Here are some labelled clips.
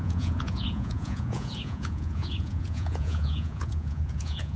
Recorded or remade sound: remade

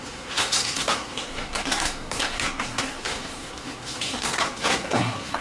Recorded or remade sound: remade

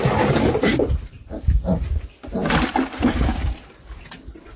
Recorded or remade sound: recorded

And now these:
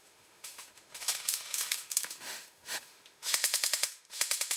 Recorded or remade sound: remade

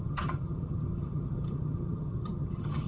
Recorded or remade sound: remade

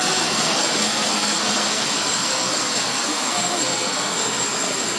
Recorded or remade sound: remade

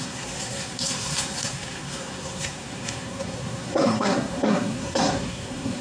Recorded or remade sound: remade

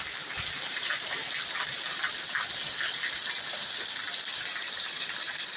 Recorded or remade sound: remade